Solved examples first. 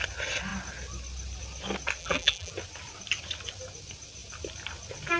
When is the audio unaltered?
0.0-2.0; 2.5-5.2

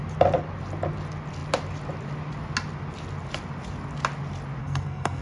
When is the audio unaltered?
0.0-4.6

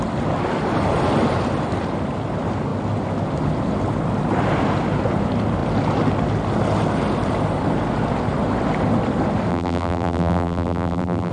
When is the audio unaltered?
0.0-9.5